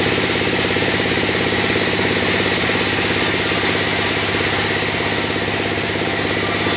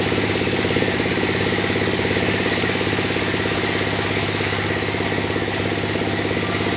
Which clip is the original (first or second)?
first